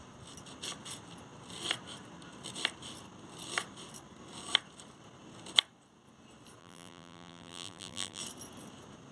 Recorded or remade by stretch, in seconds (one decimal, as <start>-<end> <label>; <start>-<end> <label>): 0.0-6.6 recorded; 6.6-8.2 remade; 8.2-9.1 recorded